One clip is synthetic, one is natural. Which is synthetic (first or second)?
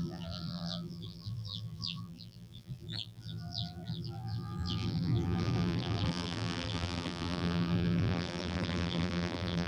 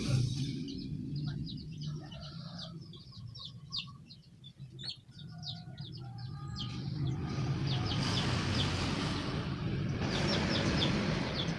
first